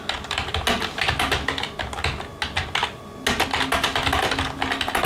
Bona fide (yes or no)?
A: yes